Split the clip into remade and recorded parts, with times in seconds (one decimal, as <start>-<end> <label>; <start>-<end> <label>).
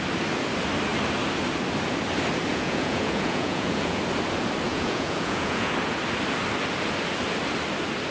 0.0-2.5 recorded; 2.5-4.0 remade; 4.0-4.7 recorded; 4.7-5.7 remade; 5.7-8.1 recorded